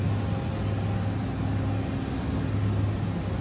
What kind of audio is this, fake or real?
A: real